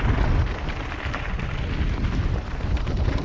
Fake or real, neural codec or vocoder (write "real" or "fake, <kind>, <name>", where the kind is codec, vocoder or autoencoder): real